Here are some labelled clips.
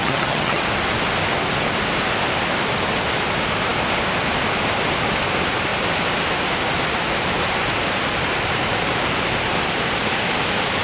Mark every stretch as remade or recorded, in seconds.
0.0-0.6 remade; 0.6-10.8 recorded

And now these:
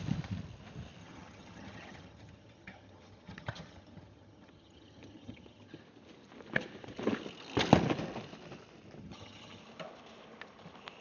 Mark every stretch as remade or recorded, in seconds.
0.0-1.0 recorded; 1.0-5.8 remade; 5.8-9.0 recorded; 9.0-9.6 remade; 9.6-11.0 recorded

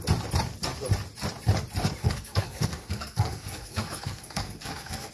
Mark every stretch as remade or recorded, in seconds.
0.0-2.0 recorded; 2.0-5.1 remade

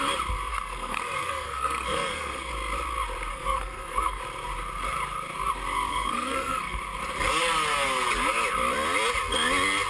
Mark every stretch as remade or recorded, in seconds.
0.0-0.5 recorded; 0.5-2.5 remade; 2.5-3.3 recorded; 3.3-4.2 remade; 4.2-5.9 recorded; 5.9-6.8 remade; 6.8-9.9 recorded

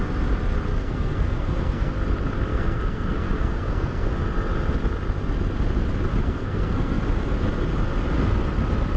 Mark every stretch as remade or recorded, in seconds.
0.0-0.7 recorded; 0.7-1.9 remade; 1.9-2.5 recorded; 2.5-4.1 remade; 4.1-6.2 recorded; 6.2-7.0 remade; 7.0-9.0 recorded

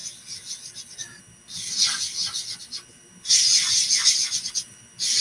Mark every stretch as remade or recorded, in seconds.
0.0-5.2 recorded

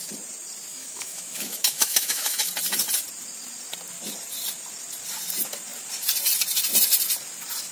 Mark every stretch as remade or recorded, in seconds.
0.0-0.7 recorded; 0.7-2.5 remade; 2.5-7.7 recorded